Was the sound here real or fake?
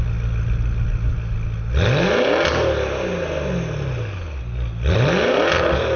real